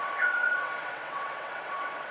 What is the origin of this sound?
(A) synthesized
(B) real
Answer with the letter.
A